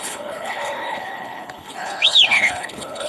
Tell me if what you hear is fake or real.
fake